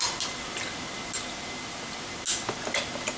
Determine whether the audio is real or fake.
real